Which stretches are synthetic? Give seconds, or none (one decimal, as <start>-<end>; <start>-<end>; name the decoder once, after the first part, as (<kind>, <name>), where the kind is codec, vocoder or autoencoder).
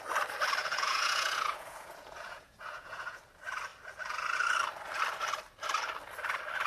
0.6-3.2 (vocoder, Vocos)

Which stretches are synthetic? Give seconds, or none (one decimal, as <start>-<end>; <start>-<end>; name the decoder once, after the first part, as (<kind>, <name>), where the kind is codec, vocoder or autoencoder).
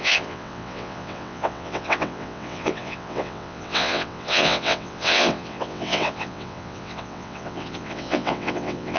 0.0-9.0 (vocoder, WaveNeXt)